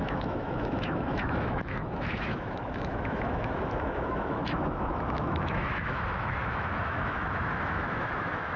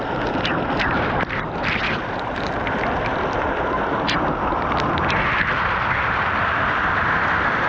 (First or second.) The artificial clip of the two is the first